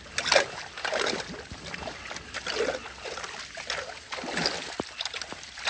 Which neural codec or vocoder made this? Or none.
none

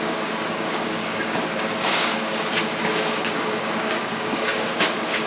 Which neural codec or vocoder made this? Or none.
codec, DAC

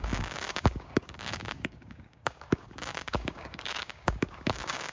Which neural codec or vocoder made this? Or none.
codec, DAC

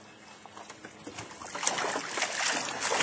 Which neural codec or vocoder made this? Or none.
none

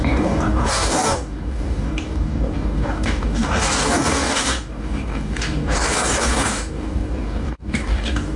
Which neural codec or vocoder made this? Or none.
codec, DAC